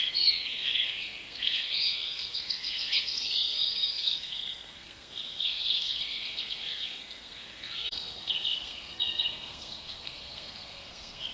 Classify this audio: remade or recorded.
remade